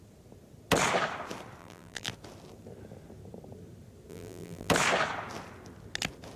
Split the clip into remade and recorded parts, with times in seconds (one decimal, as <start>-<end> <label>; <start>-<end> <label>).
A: 0.0-1.6 recorded; 1.6-2.1 remade; 2.1-4.1 recorded; 4.1-4.7 remade; 4.7-6.4 recorded